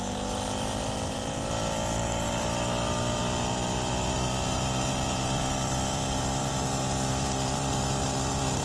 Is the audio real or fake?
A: fake